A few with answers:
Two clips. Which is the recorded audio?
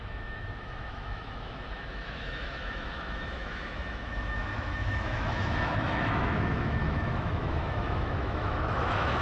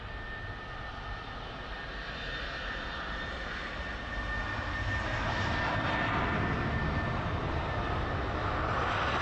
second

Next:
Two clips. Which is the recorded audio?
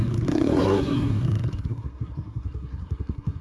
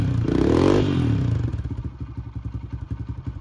second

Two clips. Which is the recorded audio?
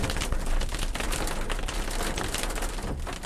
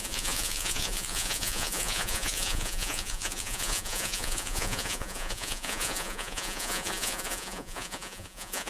first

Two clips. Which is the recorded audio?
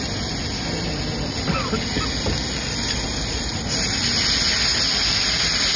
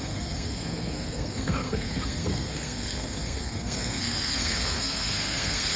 first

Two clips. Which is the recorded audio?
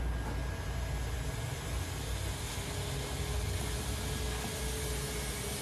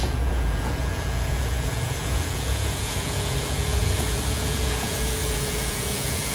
first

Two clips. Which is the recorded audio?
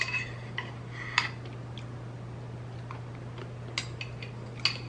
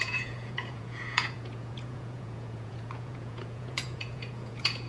first